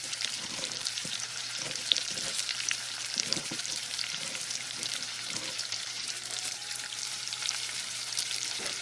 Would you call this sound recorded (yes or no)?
no